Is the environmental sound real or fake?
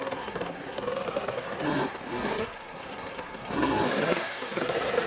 fake